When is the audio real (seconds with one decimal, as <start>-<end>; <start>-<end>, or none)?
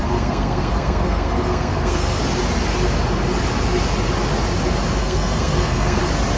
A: 2.2-5.0; 6.0-6.4